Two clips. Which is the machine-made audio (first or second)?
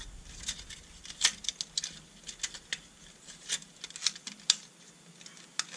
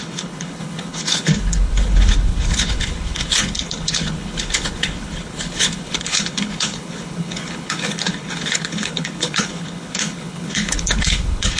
second